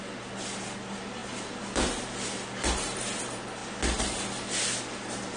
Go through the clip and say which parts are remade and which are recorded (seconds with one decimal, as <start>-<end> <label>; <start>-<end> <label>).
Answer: 0.0-5.4 recorded